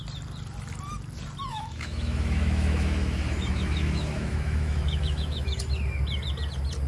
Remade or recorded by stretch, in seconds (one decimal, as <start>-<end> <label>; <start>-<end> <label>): 0.0-1.5 recorded; 1.5-5.6 remade; 5.6-6.9 recorded